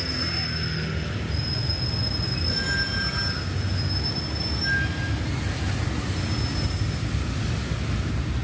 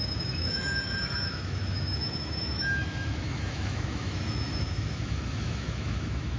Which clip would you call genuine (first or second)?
first